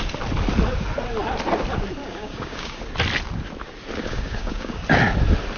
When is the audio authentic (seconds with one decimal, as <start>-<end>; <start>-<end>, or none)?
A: 0.0-2.0; 2.8-4.0; 4.8-5.6